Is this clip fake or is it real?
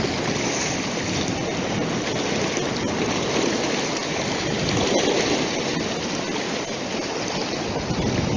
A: real